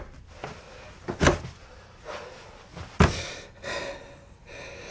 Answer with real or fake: real